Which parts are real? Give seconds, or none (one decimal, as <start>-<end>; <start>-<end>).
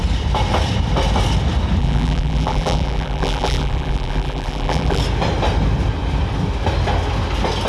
0.0-1.8; 5.0-7.7